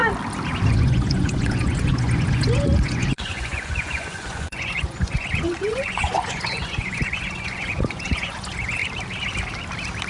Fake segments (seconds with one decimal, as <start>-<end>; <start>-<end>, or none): 0.7-8.8